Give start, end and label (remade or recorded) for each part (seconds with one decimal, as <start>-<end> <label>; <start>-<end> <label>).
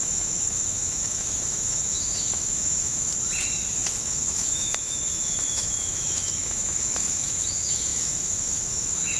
0.0-3.1 remade; 3.1-3.7 recorded; 3.7-9.2 remade